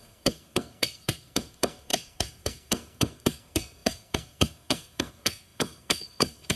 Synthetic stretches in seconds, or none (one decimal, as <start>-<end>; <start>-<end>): 0.0-6.6